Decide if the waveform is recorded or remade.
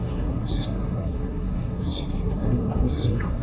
remade